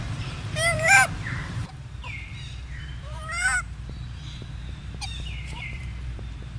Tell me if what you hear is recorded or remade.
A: remade